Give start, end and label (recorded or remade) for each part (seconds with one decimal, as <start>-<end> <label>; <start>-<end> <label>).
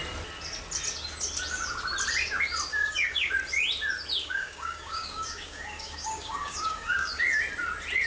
0.0-2.7 recorded; 2.7-3.3 remade; 3.3-4.2 recorded; 4.2-7.2 remade; 7.2-8.1 recorded